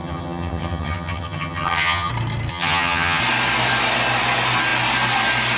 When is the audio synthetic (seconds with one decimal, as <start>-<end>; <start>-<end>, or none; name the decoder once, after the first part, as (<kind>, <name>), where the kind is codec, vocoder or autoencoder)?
0.0-2.1 (vocoder, HiFi-GAN); 2.5-3.2

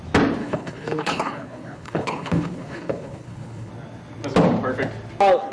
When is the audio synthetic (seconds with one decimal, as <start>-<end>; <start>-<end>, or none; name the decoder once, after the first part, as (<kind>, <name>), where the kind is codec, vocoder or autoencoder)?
0.4-3.7 (codec, HILCodec)

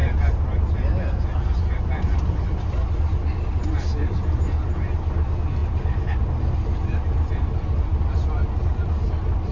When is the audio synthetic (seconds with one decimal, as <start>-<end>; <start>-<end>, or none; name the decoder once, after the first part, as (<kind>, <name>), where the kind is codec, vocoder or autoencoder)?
none

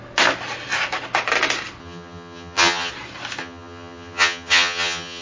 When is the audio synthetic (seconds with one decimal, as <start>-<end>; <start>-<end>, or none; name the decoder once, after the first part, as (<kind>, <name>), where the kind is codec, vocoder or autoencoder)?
1.8-2.9 (vocoder, HiFi-GAN); 3.4-5.2

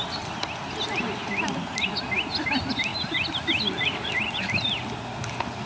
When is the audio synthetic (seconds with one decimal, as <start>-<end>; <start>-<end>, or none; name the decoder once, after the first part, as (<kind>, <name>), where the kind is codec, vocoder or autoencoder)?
none

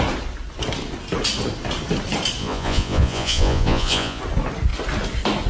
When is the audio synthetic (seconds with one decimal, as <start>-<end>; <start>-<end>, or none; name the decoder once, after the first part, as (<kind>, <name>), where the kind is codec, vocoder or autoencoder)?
2.4-4.2 (vocoder, Vocos)